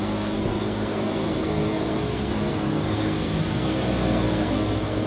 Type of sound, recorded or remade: remade